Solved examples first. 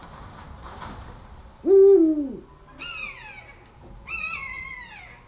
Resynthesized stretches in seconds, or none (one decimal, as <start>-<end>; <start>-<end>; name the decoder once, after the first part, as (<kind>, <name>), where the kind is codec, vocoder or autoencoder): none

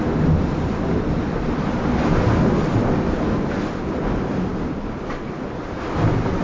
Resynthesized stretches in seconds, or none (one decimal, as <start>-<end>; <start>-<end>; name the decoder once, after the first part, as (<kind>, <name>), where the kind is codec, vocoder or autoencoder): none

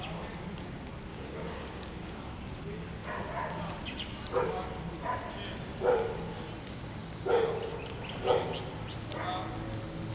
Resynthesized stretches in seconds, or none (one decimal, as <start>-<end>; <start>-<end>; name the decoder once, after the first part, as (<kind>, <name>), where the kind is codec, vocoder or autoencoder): 1.1-2.3 (codec, DAC)